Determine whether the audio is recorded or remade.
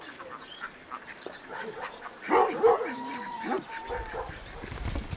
remade